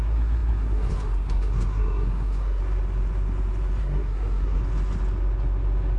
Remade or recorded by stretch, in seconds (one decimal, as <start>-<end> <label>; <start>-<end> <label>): 0.0-2.6 remade; 2.6-3.8 recorded; 3.8-4.6 remade; 4.6-6.0 recorded